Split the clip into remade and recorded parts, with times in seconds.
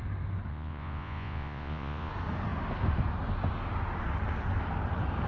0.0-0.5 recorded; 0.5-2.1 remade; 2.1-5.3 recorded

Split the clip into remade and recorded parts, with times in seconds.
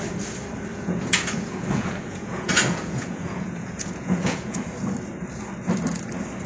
0.0-0.7 recorded; 0.7-4.6 remade; 4.6-6.5 recorded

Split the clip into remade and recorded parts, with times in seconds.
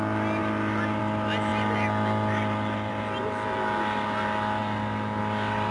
0.0-5.7 recorded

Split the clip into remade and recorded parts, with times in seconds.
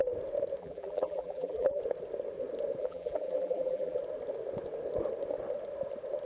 0.0-0.6 recorded; 0.6-1.8 remade; 1.8-2.8 recorded; 2.8-4.0 remade; 4.0-6.3 recorded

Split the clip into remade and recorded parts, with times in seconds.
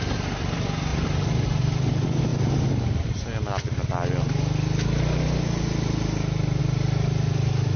0.0-7.8 recorded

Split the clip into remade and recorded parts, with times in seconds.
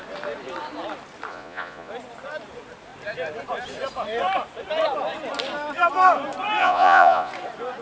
0.0-1.3 recorded; 1.3-1.9 remade; 1.9-6.6 recorded; 6.6-7.3 remade; 7.3-7.8 recorded